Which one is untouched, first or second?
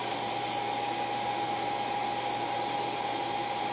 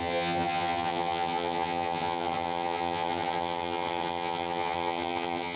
first